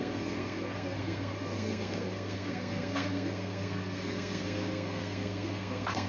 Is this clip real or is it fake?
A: fake